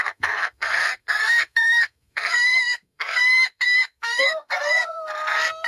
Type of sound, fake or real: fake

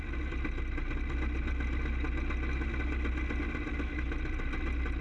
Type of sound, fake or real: real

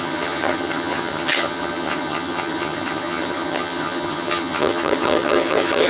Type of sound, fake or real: fake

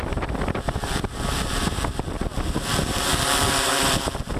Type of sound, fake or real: fake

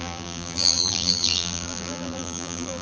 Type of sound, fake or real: fake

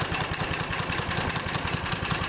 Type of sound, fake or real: fake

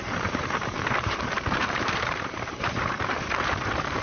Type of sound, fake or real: fake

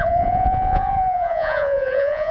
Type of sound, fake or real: fake